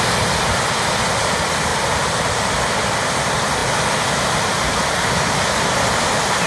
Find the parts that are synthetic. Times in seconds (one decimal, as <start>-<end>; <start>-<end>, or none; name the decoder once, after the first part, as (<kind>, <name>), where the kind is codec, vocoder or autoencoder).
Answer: none